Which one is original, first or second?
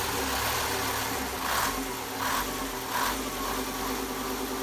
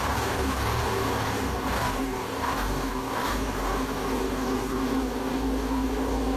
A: first